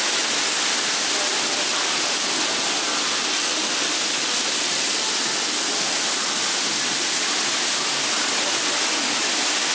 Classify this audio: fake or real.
real